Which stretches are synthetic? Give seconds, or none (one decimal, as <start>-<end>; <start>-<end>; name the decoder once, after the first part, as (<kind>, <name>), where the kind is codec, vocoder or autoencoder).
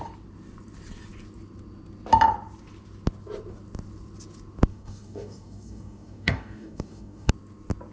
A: 4.7-7.3 (codec, DAC)